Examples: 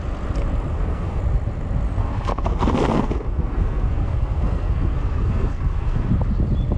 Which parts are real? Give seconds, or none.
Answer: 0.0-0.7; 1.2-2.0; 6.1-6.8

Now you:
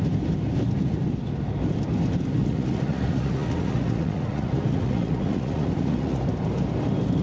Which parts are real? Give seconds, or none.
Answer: 0.0-2.4; 6.2-7.2

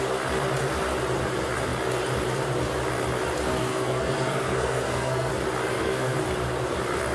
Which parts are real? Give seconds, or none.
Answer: 0.0-3.7; 5.3-5.7; 6.2-7.1